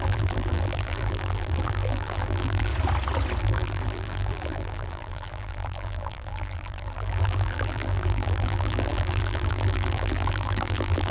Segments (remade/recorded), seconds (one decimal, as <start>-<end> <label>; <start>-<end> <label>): 0.0-2.7 remade; 2.7-3.4 recorded; 3.4-11.1 remade